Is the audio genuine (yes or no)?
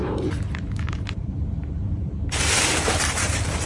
no